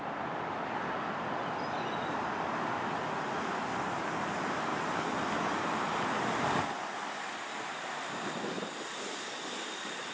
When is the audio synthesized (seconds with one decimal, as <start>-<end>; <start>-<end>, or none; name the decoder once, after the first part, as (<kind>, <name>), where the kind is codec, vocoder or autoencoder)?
none